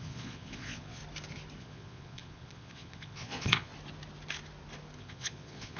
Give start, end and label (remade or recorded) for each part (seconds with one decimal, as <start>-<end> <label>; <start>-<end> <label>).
0.0-1.0 remade; 1.0-1.6 recorded; 1.6-3.7 remade; 3.7-5.0 recorded; 5.0-5.8 remade